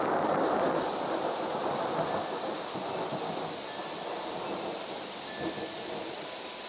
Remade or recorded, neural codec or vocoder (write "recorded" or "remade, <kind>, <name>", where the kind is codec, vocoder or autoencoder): recorded